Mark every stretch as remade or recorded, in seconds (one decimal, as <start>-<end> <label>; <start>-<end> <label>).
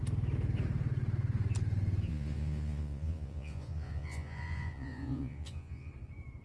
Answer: 0.0-2.1 recorded; 2.1-5.9 remade; 5.9-6.4 recorded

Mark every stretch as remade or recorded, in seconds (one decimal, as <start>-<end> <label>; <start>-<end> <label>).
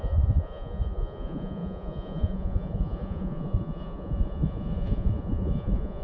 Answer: 0.0-6.0 remade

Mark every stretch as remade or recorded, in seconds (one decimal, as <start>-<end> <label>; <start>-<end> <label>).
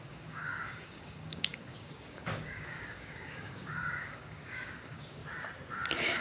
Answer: 0.0-5.2 remade; 5.2-6.2 recorded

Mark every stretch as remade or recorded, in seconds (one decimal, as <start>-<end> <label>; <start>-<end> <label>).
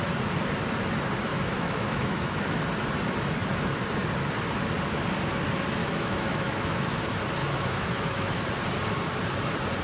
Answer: 0.0-1.3 recorded; 1.3-2.6 remade; 2.6-5.8 recorded; 5.8-7.0 remade; 7.0-7.4 recorded; 7.4-8.4 remade; 8.4-9.8 recorded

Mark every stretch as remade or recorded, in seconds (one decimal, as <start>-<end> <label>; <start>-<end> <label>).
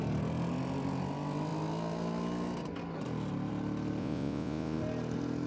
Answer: 0.0-4.0 recorded; 4.0-4.8 remade; 4.8-5.5 recorded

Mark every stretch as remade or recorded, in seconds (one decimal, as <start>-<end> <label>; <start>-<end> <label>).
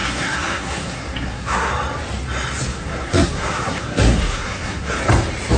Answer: 0.0-1.7 remade; 1.7-2.7 recorded; 2.7-5.0 remade; 5.0-5.6 recorded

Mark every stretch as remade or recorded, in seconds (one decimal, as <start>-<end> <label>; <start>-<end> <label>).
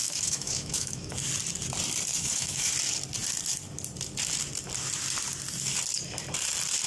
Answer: 0.0-1.1 remade; 1.1-2.1 recorded; 2.1-2.7 remade; 2.7-6.9 recorded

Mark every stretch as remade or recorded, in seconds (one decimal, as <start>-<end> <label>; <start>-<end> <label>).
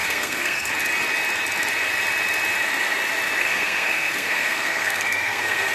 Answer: 0.0-0.7 remade; 0.7-3.4 recorded; 3.4-5.7 remade